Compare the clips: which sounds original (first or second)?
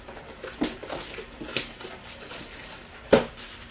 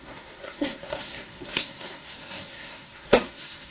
first